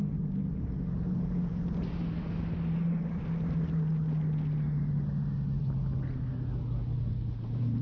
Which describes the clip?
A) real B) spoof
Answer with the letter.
A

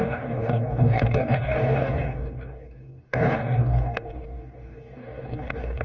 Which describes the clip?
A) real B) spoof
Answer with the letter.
B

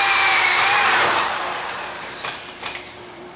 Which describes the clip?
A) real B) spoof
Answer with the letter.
B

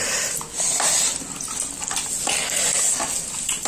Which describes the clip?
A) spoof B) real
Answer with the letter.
B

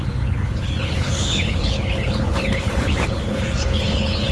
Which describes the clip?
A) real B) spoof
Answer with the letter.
B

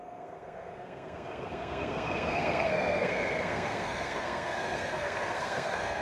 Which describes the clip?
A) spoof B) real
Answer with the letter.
A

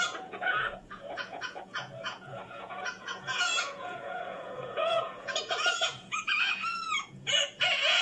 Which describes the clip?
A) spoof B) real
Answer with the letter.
A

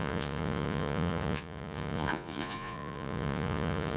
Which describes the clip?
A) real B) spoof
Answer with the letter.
B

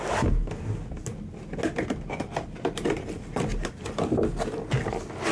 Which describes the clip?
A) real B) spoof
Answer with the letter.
A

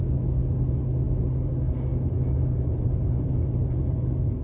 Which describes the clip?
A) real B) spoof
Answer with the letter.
A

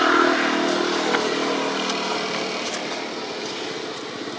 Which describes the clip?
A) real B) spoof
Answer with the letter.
A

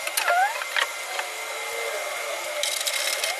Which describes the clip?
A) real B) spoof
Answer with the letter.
A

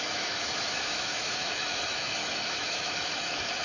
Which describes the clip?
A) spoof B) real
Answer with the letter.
A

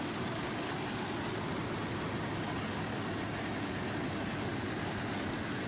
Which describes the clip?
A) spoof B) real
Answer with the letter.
B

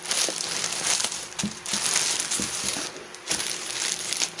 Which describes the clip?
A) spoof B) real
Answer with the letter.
B